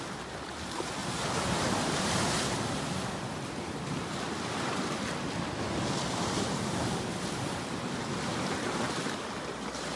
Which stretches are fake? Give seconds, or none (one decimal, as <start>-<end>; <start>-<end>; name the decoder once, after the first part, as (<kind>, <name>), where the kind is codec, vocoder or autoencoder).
1.0-4.7 (vocoder, BigVGAN v2)